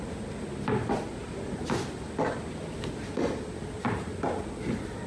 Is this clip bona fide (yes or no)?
yes